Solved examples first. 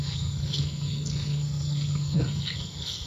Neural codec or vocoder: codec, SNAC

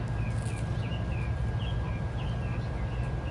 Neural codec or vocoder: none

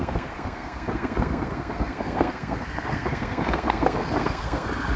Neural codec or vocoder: codec, SNAC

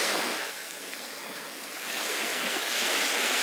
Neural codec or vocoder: codec, SNAC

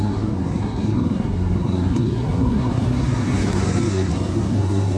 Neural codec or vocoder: codec, SNAC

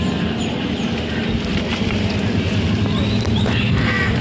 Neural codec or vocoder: none